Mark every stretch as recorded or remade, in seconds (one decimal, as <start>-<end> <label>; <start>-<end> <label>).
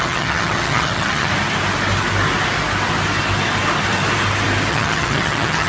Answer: 0.0-1.3 remade; 1.3-4.7 recorded; 4.7-5.7 remade